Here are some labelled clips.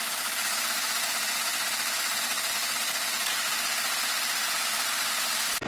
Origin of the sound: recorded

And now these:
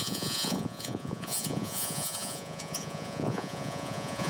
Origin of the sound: remade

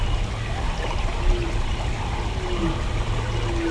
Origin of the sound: recorded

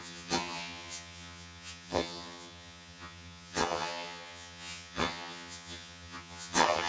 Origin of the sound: remade